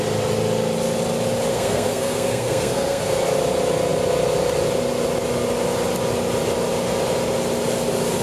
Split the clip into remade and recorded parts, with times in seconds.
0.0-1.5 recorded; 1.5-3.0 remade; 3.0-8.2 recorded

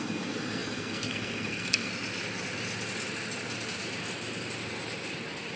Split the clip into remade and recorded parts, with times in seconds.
0.0-1.9 remade; 1.9-5.6 recorded

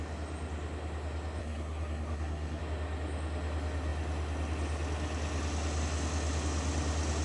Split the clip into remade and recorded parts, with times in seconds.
0.0-1.4 recorded; 1.4-2.6 remade; 2.6-7.2 recorded

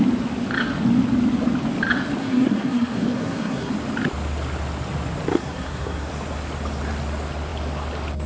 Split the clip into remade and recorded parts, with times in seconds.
0.0-2.2 recorded; 2.2-3.7 remade; 3.7-5.3 recorded; 5.3-6.1 remade; 6.1-8.3 recorded

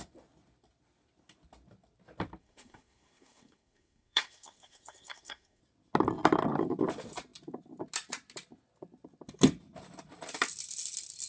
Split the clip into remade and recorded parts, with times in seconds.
0.0-2.4 recorded; 2.4-5.6 remade; 5.6-11.3 recorded

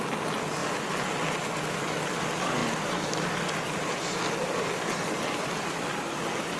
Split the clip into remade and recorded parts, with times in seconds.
0.0-6.6 recorded

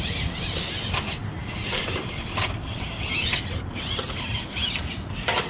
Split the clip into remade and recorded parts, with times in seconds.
0.0-5.5 recorded